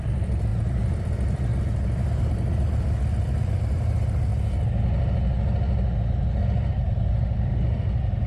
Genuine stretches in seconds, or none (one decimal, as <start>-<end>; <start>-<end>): 1.5-2.2; 4.3-6.4